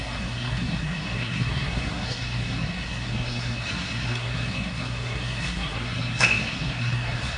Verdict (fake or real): fake